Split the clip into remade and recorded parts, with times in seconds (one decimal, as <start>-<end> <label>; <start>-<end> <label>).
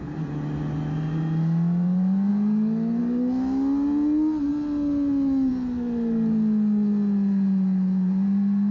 0.0-8.7 recorded